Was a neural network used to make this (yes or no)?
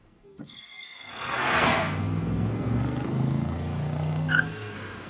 yes